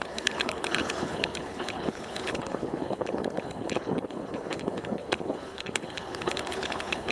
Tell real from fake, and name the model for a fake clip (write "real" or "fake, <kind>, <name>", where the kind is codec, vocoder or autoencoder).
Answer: fake, codec, HILCodec